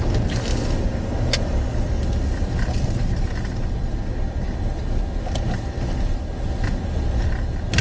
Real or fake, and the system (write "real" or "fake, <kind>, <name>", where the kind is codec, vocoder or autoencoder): real